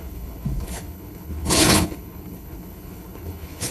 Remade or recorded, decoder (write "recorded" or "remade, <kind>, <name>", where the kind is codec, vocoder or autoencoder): remade, codec, HILCodec